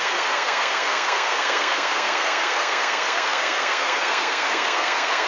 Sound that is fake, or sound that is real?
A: fake